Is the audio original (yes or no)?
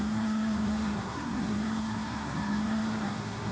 no